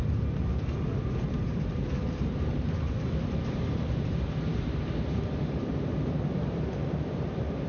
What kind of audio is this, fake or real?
fake